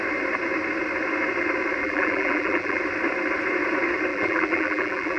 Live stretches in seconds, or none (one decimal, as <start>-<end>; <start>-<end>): 0.0-1.8; 2.8-4.1